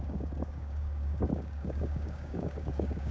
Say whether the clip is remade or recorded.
remade